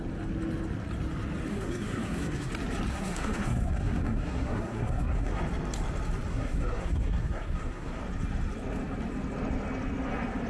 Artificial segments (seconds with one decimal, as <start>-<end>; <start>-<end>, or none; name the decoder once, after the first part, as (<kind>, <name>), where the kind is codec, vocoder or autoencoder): 1.5-2.5 (codec, SNAC); 2.9-5.4; 6.3-8.0